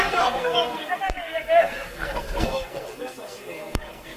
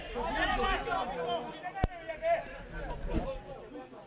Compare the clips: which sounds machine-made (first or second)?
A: first